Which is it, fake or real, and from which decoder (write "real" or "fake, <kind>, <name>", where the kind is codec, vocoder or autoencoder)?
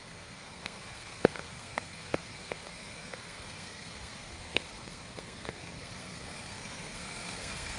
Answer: fake, codec, SNAC